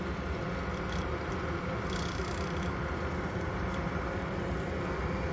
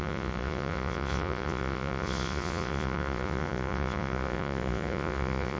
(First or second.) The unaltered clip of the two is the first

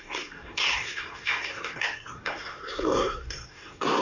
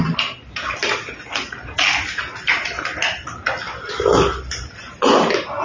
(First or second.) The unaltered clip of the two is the second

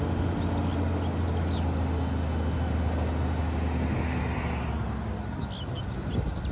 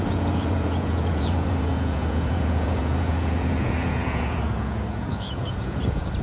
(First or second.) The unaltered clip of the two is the first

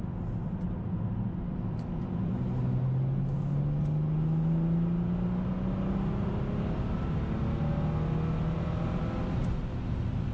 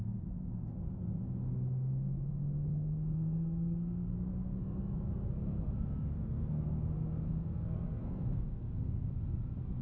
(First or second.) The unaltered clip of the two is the first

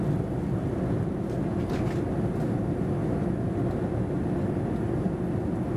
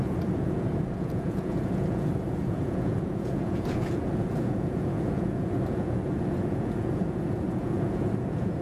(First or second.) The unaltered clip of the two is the first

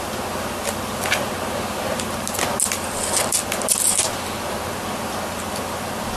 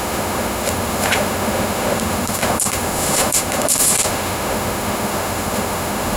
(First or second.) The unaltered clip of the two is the first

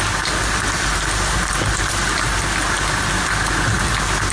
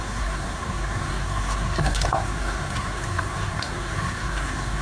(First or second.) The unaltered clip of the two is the first